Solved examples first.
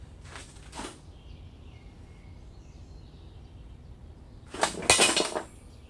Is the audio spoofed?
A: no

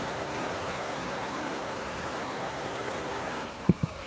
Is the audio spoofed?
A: yes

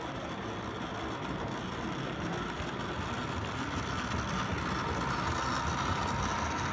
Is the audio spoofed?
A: no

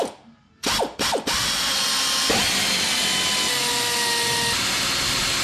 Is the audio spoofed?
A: no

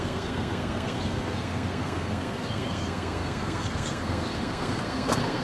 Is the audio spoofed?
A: yes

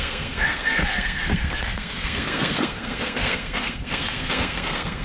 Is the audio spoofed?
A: yes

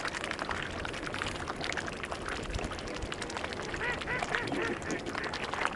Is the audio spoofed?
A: no